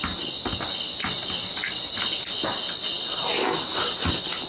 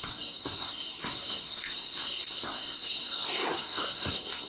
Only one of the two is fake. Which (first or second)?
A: second